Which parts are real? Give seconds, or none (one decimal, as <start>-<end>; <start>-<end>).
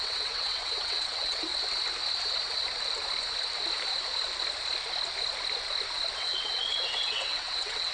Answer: 1.5-6.2